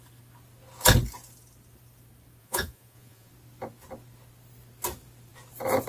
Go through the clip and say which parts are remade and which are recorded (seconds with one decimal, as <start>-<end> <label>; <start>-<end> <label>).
0.0-2.4 recorded; 2.4-3.3 remade; 3.3-5.9 recorded